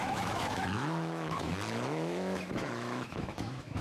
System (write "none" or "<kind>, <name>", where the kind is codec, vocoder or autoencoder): autoencoder, DAC-VAE